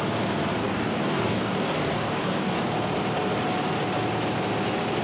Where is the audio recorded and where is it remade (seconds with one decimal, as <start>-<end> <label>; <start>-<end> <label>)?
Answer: 0.0-0.6 recorded; 0.6-2.6 remade; 2.6-5.0 recorded